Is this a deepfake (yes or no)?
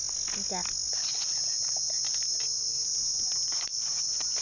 no